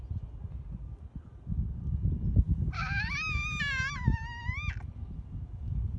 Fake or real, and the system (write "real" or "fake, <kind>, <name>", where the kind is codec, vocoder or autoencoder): real